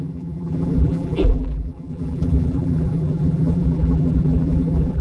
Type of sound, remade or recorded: remade